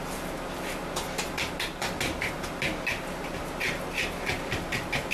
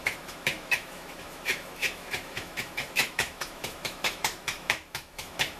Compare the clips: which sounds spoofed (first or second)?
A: second